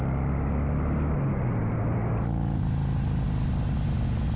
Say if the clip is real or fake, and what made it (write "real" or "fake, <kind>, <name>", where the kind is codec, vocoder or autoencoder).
real